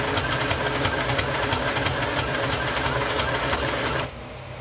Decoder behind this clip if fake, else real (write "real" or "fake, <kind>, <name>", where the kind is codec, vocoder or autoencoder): real